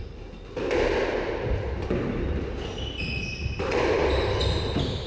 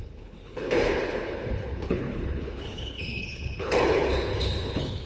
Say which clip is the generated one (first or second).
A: second